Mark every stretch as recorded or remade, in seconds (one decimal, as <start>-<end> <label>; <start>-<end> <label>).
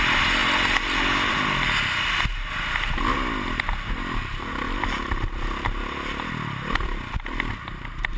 0.0-8.2 recorded